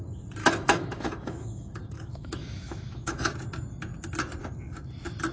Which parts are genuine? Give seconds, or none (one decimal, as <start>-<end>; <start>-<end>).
0.0-0.4; 3.3-5.3